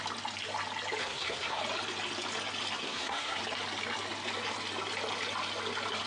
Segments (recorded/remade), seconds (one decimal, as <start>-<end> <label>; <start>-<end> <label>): 0.0-1.0 recorded; 1.0-1.6 remade; 1.6-2.8 recorded; 2.8-3.4 remade; 3.4-6.1 recorded